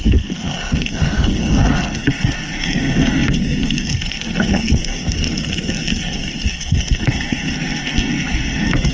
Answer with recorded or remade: remade